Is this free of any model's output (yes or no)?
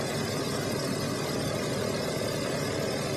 yes